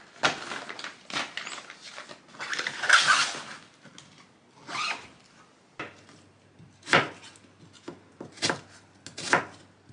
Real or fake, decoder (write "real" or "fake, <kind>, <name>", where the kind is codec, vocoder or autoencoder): real